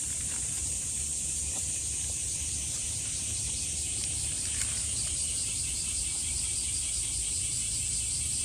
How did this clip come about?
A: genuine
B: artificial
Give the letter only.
B